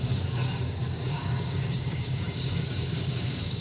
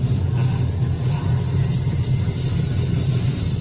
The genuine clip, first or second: second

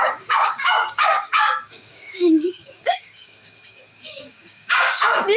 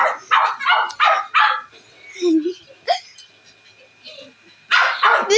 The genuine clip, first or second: second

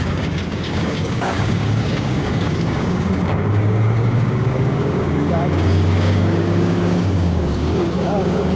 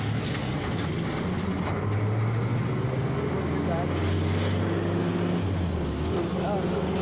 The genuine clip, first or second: second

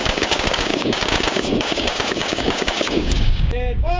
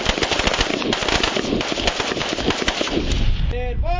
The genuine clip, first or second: second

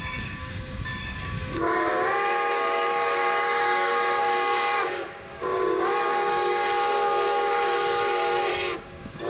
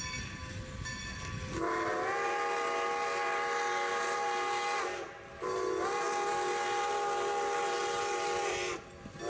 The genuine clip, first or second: second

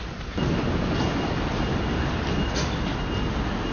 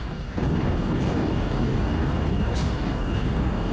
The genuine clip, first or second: first